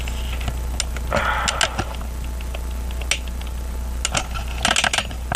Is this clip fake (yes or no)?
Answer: no